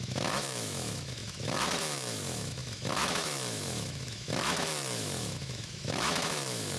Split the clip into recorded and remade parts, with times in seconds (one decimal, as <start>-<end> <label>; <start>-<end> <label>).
0.0-6.8 remade